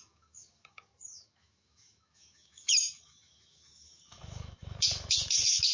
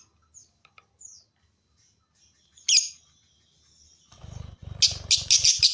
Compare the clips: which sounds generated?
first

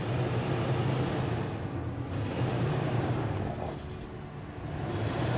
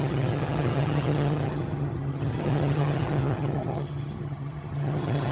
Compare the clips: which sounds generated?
second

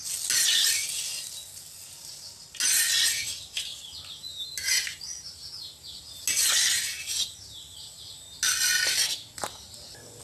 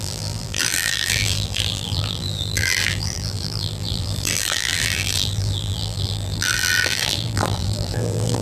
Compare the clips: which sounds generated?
second